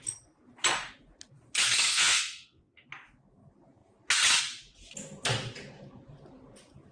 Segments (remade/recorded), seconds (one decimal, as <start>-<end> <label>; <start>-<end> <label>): 0.0-1.9 recorded; 1.9-2.7 remade; 2.7-6.9 recorded